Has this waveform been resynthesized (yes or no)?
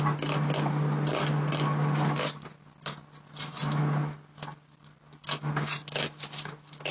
no